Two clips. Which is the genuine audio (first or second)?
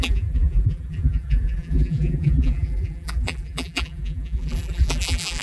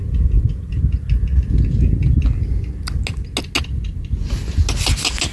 second